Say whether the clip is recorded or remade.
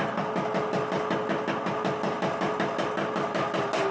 recorded